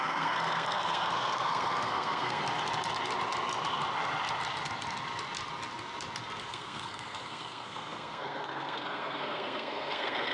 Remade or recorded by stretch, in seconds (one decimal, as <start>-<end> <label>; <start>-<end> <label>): 0.0-2.4 remade; 2.4-6.5 recorded; 6.5-10.3 remade